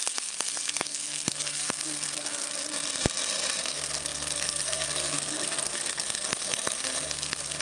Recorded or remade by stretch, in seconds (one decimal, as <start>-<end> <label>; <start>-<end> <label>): 0.0-2.5 remade; 2.5-3.6 recorded; 3.6-7.6 remade